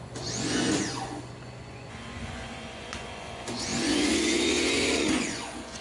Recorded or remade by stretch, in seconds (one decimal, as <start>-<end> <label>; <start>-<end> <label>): 0.0-5.8 remade